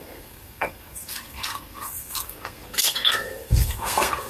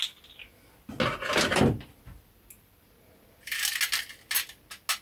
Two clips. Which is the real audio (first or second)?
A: second